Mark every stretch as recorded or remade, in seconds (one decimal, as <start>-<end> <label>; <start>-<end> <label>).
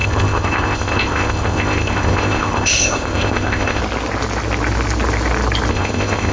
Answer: 0.0-3.8 remade; 3.8-5.7 recorded; 5.7-6.3 remade